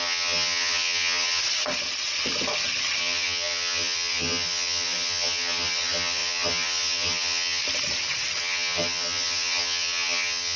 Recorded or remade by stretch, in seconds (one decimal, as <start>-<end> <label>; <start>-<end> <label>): 0.0-1.4 remade; 1.4-3.0 recorded; 3.0-7.6 remade; 7.6-8.4 recorded; 8.4-10.6 remade